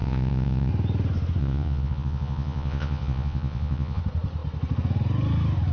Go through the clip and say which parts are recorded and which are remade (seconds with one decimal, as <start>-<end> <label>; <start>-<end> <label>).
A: 0.0-0.7 remade; 0.7-1.4 recorded; 1.4-4.0 remade; 4.0-5.7 recorded